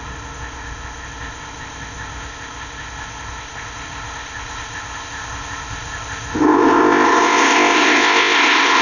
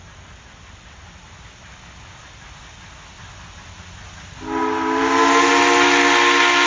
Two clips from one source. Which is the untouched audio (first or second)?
second